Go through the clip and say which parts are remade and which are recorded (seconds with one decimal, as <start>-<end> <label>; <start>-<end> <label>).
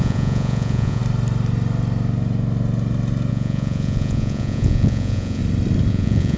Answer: 0.0-1.0 remade; 1.0-3.3 recorded; 3.3-5.4 remade; 5.4-5.9 recorded; 5.9-6.4 remade